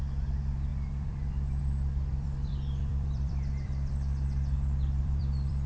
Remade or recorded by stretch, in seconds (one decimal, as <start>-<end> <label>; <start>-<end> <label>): 0.0-0.7 recorded; 0.7-1.6 remade; 1.6-2.1 recorded; 2.1-5.7 remade

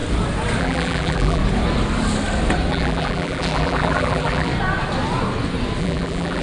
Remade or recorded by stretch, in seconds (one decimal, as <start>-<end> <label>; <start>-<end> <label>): 0.0-0.6 recorded; 0.6-1.4 remade; 1.4-2.7 recorded; 2.7-4.5 remade; 4.5-5.8 recorded; 5.8-6.4 remade